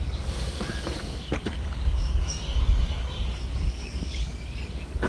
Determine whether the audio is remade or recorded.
remade